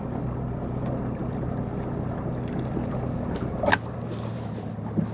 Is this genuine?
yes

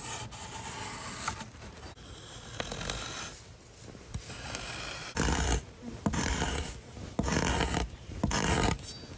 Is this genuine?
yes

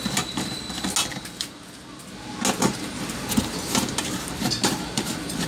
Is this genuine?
yes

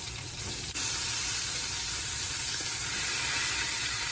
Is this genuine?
no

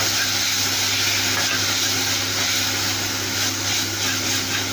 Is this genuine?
yes